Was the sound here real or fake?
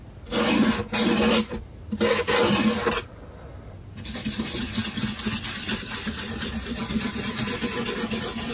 real